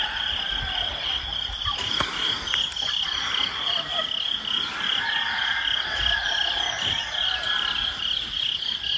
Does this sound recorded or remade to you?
recorded